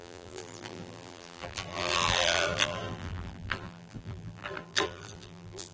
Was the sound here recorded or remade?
remade